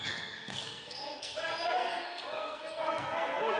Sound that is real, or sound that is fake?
fake